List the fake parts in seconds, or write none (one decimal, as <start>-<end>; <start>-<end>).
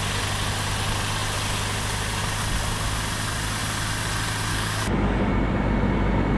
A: 4.5-5.3